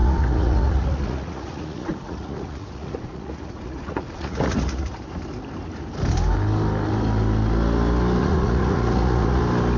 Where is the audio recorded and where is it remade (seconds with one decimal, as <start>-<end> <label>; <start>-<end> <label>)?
0.0-5.0 remade; 5.0-8.2 recorded; 8.2-9.4 remade; 9.4-9.8 recorded

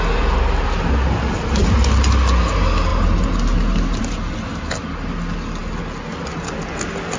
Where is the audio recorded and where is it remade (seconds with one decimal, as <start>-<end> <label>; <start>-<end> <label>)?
0.0-7.2 recorded

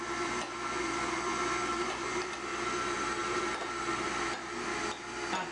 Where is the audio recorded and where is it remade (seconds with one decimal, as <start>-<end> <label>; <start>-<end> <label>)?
0.0-5.5 recorded

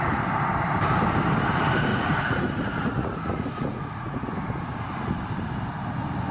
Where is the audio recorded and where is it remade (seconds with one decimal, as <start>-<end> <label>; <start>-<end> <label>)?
0.0-1.9 recorded; 1.9-4.3 remade; 4.3-6.3 recorded

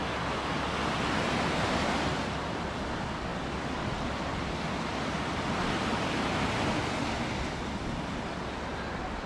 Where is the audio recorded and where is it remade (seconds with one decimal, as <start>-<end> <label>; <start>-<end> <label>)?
0.0-9.3 recorded